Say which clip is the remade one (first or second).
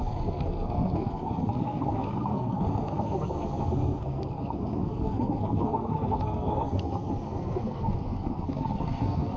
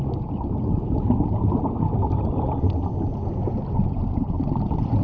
first